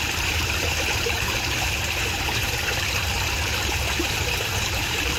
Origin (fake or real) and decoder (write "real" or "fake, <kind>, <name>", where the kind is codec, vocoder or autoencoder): fake, vocoder, BigVGAN v2